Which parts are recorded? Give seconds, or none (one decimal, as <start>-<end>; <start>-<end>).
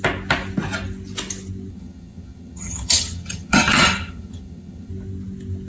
0.0-1.7; 4.9-5.7